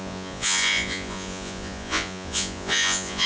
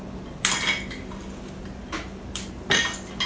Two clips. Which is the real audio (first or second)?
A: second